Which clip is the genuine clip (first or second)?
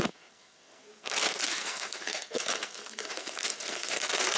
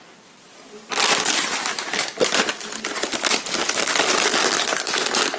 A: second